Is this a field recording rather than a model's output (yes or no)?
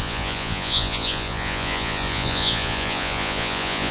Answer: no